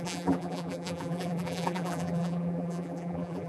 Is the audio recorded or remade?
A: remade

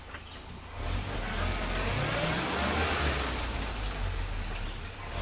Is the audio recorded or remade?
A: recorded